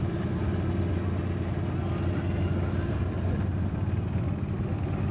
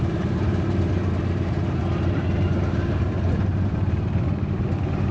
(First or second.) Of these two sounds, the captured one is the first